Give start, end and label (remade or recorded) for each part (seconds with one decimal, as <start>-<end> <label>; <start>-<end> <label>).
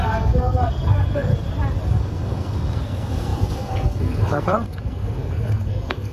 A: 0.0-1.3 remade; 1.3-1.9 recorded; 1.9-6.1 remade